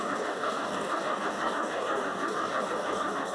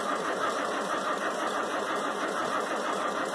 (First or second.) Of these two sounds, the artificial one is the first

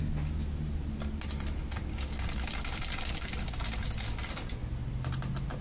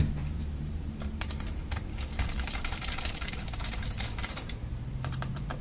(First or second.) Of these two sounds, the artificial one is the second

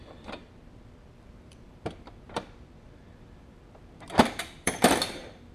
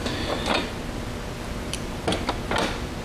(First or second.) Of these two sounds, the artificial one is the first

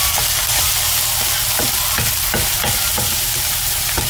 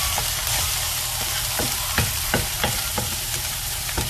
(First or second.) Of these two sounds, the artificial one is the second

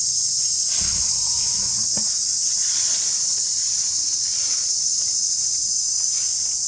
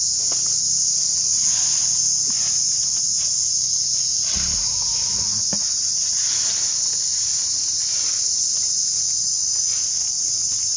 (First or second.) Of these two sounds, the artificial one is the first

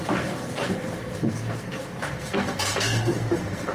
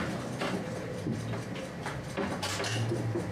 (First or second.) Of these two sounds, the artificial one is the first